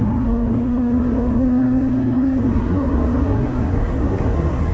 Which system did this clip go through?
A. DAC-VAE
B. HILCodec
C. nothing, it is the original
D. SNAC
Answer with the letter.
D